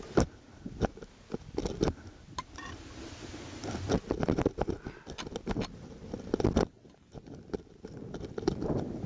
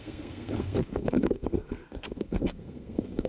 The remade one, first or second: second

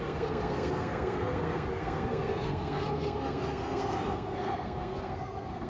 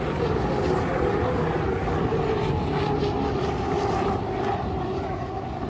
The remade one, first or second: first